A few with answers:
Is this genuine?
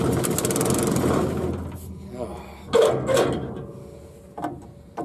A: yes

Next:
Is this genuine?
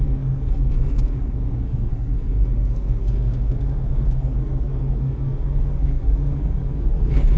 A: no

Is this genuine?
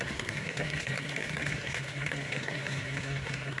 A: no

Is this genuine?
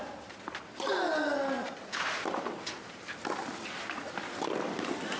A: yes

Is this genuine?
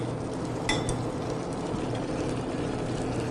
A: yes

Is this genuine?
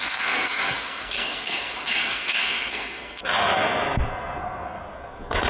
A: no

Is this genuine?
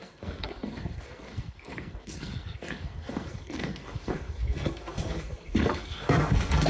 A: no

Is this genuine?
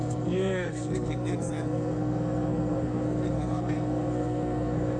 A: no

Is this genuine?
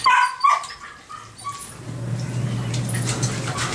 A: yes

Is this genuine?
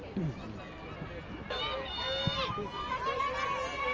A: yes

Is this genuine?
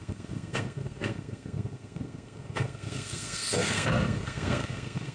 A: no